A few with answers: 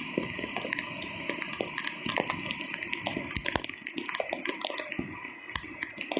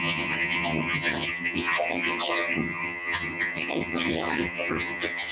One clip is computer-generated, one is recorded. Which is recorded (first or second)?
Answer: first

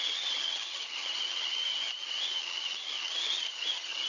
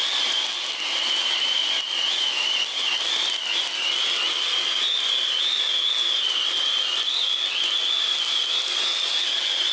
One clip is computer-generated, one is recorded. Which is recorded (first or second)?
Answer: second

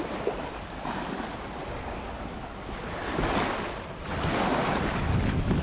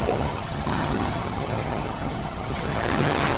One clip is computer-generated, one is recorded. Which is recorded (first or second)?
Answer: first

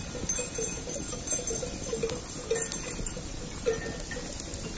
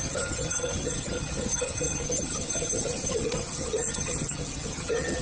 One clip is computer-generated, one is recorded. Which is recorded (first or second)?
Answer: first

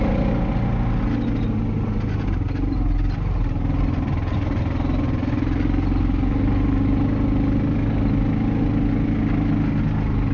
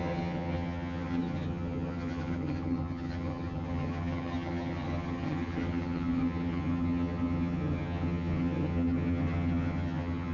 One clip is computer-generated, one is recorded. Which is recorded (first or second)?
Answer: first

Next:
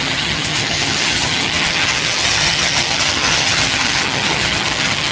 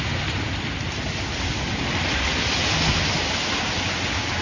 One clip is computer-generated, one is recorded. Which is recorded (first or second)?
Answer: second